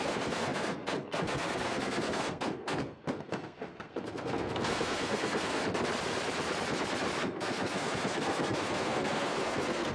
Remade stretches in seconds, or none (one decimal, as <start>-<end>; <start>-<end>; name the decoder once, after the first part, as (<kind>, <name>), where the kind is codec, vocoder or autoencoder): 0.0-5.6 (codec, SNAC); 7.2-9.9